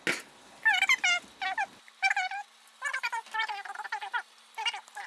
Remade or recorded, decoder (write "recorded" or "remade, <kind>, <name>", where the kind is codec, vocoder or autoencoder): recorded